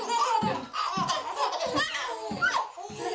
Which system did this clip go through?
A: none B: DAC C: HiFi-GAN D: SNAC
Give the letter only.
A